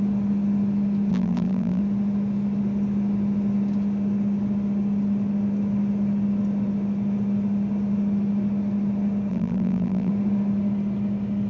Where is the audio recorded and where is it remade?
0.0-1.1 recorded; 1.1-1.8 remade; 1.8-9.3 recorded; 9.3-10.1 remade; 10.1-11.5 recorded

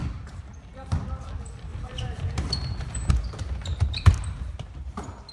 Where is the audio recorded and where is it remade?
0.0-0.6 remade; 0.6-1.7 recorded; 1.7-3.1 remade; 3.1-5.3 recorded